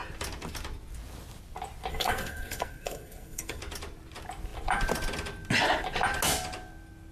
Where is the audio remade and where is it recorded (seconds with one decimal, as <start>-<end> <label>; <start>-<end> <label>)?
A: 0.0-1.9 recorded; 1.9-3.6 remade; 3.6-7.1 recorded